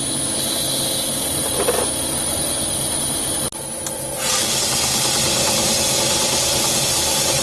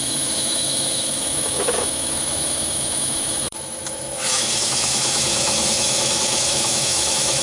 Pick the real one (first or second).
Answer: first